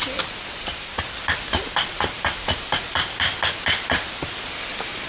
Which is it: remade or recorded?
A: recorded